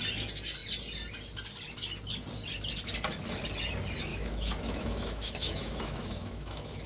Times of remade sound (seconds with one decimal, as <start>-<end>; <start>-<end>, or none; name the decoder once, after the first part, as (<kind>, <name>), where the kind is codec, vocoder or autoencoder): 4.1-6.9 (autoencoder, DAC-VAE)